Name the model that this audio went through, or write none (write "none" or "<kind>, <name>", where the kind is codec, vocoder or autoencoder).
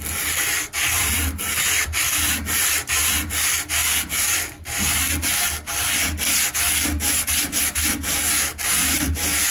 none